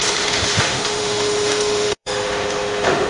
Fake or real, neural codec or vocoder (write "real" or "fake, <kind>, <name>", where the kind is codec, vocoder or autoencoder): fake, autoencoder, DAC-VAE